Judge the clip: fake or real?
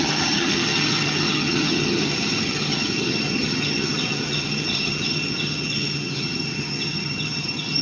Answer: fake